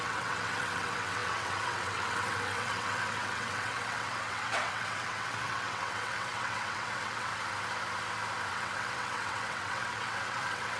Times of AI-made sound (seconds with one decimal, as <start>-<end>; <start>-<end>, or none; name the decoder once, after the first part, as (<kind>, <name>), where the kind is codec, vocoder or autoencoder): 0.0-7.3 (vocoder, WaveNeXt); 8.5-10.8